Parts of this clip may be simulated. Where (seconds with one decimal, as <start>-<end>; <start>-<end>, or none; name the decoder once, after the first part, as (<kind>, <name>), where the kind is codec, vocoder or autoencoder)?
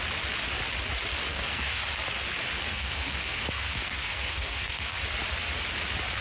1.3-1.8 (codec, SNAC); 2.7-5.0